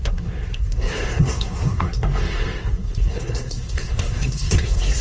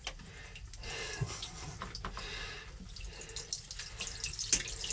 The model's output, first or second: first